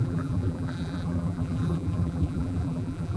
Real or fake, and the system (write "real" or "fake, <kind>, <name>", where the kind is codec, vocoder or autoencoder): fake, vocoder, BigVGAN v2